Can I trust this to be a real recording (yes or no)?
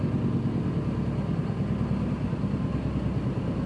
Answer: yes